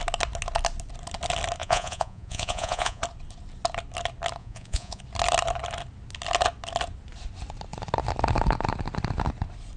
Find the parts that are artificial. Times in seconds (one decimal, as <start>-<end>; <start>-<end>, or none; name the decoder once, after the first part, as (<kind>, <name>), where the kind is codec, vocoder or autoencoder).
1.6-3.0 (vocoder, Vocos); 4.4-5.0